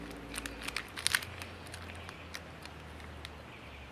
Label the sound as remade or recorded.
recorded